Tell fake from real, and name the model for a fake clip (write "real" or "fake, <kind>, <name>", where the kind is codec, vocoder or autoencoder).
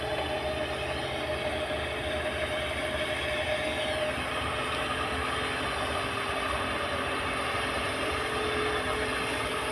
real